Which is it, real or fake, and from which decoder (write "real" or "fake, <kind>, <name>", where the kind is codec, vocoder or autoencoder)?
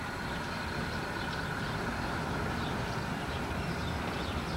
fake, vocoder, BigVGAN v2